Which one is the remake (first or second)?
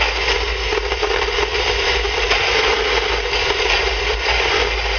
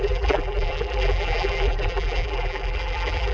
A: second